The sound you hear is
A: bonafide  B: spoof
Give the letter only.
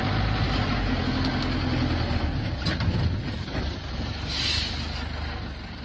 A